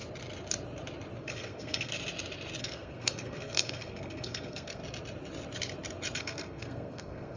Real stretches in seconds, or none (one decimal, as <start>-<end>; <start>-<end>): 0.0-1.2; 1.9-2.6; 4.8-6.2